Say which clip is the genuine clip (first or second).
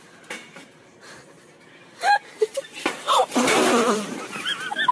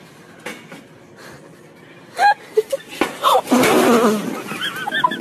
second